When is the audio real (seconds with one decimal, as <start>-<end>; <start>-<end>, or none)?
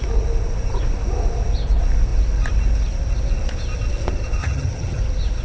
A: 0.0-4.4; 5.0-5.4